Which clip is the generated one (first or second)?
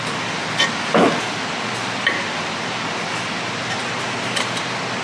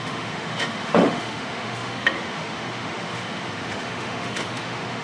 second